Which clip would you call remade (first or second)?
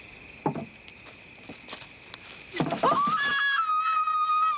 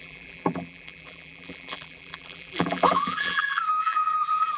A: second